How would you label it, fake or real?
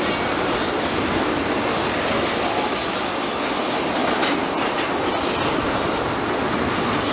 real